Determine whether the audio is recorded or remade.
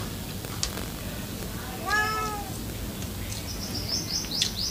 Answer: recorded